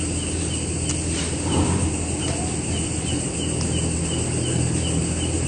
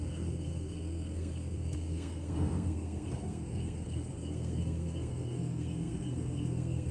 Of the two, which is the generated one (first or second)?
second